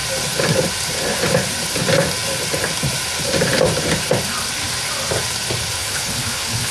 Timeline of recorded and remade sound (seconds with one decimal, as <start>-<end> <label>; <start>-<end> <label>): 0.0-5.8 recorded; 5.8-6.7 remade